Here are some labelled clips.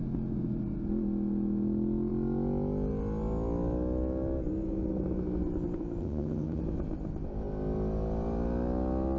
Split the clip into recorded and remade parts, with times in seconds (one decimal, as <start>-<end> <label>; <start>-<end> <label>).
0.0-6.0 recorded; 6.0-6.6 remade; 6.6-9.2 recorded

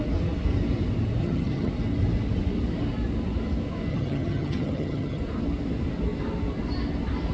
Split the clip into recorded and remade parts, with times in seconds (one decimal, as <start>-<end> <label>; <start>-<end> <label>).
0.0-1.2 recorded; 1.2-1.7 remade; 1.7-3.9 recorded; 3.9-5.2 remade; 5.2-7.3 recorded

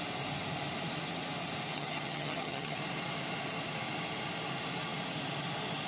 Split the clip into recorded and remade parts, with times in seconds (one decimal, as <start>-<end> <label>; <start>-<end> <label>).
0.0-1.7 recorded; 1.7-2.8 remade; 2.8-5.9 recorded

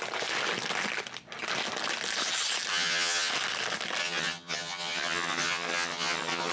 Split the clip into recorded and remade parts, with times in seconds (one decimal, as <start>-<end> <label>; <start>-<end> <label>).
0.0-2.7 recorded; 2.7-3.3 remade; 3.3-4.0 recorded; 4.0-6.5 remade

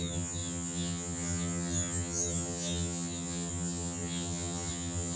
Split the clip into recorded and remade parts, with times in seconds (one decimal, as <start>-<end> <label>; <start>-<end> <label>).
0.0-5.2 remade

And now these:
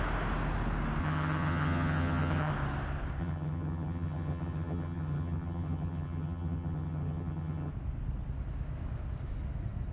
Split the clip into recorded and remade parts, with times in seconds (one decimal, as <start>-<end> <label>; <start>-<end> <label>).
0.0-1.0 recorded; 1.0-2.5 remade; 2.5-3.2 recorded; 3.2-7.7 remade; 7.7-9.9 recorded

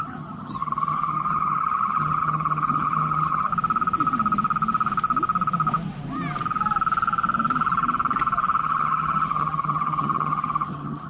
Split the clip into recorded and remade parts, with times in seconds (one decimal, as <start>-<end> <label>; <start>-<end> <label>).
0.0-3.5 remade; 3.5-8.6 recorded; 8.6-11.1 remade